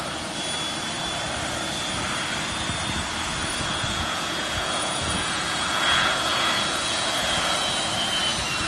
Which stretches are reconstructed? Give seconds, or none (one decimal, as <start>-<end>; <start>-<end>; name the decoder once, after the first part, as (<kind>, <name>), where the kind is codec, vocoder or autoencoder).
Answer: 3.4-7.6 (vocoder, Vocos)